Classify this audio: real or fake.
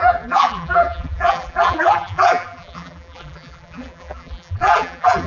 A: fake